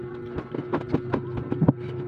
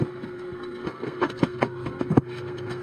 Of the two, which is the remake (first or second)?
second